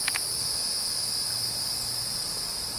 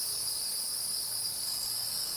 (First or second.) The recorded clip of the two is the first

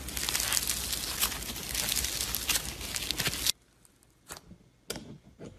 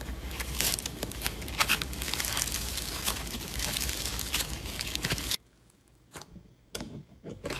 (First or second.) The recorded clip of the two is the first